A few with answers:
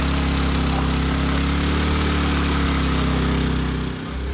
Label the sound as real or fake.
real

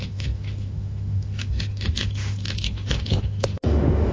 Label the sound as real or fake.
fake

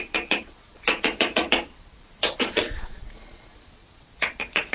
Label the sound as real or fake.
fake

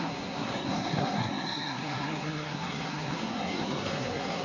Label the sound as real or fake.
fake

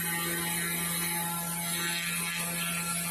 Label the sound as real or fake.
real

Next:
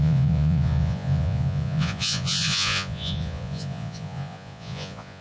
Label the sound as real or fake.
fake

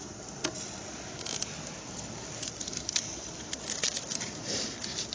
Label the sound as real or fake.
real